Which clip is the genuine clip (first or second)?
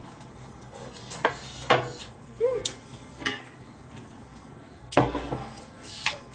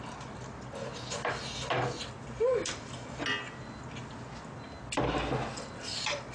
second